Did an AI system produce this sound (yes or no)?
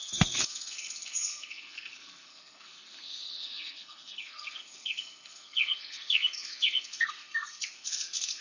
yes